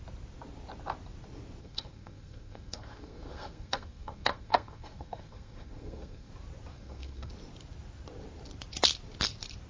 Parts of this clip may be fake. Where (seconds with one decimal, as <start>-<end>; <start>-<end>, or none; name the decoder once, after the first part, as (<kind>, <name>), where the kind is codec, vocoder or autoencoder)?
1.6-6.3 (codec, SNAC); 6.7-7.3